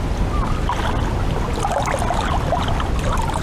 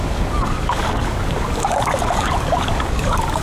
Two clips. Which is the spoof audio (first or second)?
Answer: second